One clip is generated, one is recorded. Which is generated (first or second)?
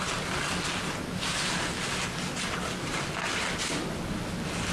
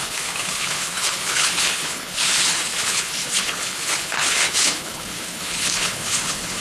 second